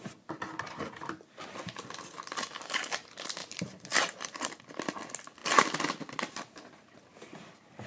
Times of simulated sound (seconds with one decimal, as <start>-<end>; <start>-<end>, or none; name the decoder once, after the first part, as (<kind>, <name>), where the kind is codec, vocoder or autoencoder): 3.4-4.6 (vocoder, BigVGAN v2)